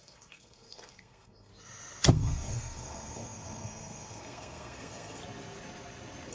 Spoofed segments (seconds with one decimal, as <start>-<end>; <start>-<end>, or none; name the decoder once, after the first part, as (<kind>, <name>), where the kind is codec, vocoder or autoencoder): 0.0-1.5 (codec, SNAC); 2.1-5.2